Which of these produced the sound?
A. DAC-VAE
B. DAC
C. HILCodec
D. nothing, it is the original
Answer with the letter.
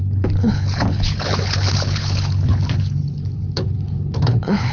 C